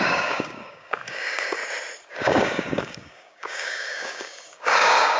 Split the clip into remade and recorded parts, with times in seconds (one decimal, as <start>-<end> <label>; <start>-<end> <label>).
0.0-1.6 remade; 1.6-2.1 recorded; 2.1-5.2 remade